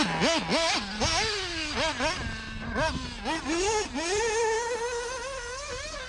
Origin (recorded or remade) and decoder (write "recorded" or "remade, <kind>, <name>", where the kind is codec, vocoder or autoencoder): recorded